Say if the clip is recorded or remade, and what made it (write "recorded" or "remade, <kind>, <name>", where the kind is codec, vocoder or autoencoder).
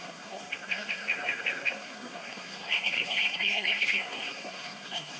remade, codec, SNAC